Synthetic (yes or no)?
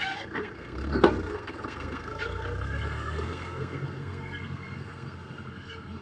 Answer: yes